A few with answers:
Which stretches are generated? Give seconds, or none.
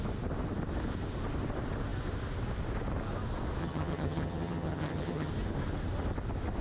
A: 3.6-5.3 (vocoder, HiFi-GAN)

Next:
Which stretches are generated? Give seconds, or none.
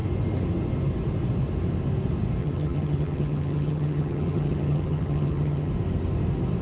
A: 2.4-5.7 (vocoder, HiFi-GAN)